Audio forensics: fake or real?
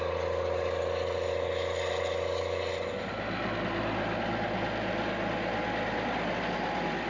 real